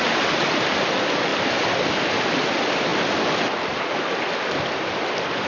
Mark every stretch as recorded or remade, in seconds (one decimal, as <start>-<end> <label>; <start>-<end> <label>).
0.0-1.3 recorded; 1.3-2.1 remade; 2.1-5.5 recorded